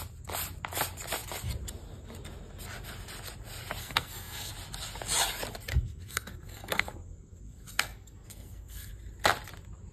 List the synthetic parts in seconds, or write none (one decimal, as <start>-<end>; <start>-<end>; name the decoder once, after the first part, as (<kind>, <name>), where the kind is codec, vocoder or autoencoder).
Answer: 3.8-4.5 (codec, SNAC); 5.7-8.9